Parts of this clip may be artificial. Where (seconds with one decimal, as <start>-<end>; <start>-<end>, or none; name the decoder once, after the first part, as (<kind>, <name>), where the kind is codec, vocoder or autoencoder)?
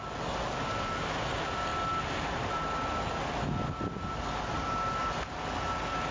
none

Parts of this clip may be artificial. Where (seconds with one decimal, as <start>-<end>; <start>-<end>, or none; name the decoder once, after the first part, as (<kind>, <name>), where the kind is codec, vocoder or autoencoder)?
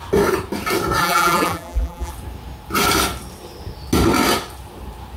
1.0-2.1 (vocoder, BigVGAN v2)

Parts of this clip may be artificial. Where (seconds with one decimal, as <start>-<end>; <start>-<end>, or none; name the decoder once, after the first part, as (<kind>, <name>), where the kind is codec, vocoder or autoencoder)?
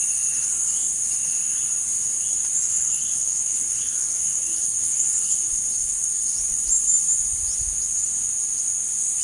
2.7-6.3 (codec, HILCodec)